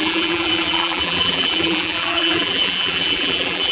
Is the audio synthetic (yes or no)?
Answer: yes